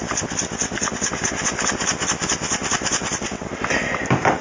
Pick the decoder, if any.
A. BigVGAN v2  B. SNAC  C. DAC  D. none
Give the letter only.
D